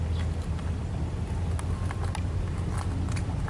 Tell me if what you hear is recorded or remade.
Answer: recorded